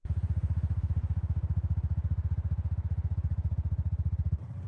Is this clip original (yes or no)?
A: yes